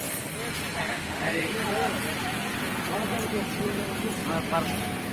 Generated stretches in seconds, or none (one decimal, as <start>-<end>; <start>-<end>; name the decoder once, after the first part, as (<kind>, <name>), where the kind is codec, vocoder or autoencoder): 0.9-1.5 (autoencoder, DAC-VAE)